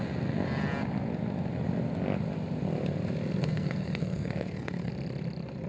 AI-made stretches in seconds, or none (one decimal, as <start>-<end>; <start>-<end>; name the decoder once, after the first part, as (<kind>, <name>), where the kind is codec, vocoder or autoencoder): 3.4-4.9 (codec, SNAC)